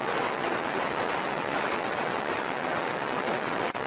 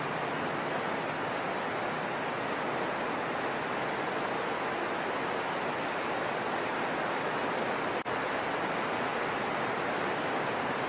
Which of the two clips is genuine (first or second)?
second